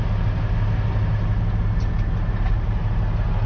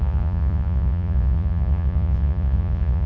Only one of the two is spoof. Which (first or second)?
second